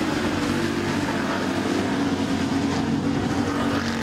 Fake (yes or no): no